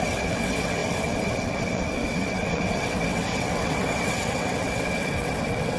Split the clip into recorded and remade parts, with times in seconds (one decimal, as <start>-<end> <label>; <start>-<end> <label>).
0.0-5.8 remade